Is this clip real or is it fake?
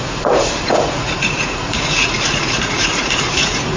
fake